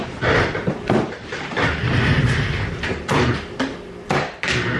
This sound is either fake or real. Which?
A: real